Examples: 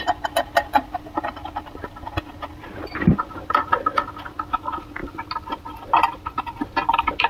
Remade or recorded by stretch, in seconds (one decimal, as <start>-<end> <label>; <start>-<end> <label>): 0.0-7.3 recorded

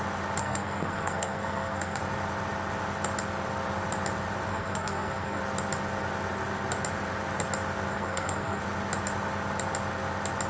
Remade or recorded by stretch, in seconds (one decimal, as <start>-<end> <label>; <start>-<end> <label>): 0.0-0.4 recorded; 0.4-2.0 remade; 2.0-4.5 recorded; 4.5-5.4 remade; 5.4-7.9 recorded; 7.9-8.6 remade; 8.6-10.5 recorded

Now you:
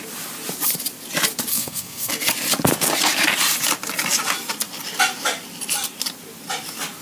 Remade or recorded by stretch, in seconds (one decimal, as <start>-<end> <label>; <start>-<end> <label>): 0.0-1.5 recorded; 1.5-2.1 remade; 2.1-7.0 recorded

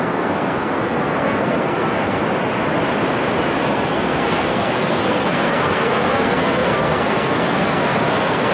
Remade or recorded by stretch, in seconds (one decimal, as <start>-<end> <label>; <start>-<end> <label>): 0.0-2.2 remade; 2.2-3.6 recorded; 3.6-8.5 remade

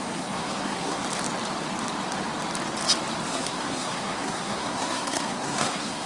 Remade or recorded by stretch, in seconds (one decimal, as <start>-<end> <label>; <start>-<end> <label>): 0.0-1.0 remade; 1.0-3.3 recorded; 3.3-6.1 remade

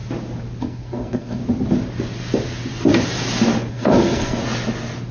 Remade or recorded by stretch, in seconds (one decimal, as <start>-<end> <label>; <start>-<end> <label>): 0.0-0.6 recorded; 0.6-1.4 remade; 1.4-3.7 recorded; 3.7-4.4 remade; 4.4-5.1 recorded